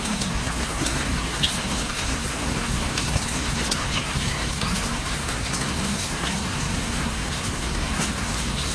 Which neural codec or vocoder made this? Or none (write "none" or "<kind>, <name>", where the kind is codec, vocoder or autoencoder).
codec, SNAC